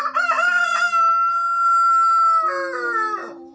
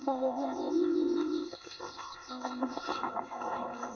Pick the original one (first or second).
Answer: first